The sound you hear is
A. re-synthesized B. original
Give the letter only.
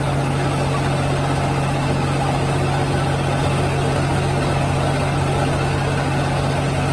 B